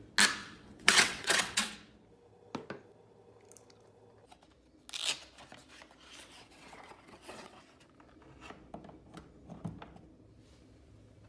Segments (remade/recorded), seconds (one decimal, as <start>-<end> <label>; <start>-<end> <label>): 0.0-0.4 recorded; 0.4-1.7 remade; 1.7-6.2 recorded; 6.2-7.6 remade; 7.6-11.3 recorded